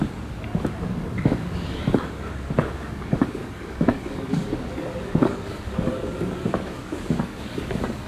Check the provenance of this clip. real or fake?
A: fake